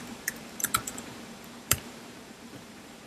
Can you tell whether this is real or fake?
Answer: fake